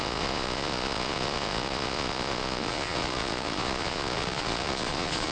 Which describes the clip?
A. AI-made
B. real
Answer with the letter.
A